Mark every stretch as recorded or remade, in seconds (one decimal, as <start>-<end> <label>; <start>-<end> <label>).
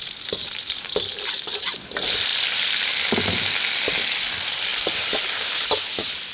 0.0-6.3 recorded